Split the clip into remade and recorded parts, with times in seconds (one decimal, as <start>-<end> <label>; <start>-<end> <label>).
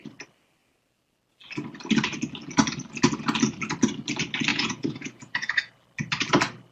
0.0-4.5 recorded; 4.5-5.7 remade; 5.7-6.7 recorded